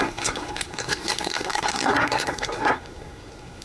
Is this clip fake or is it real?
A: fake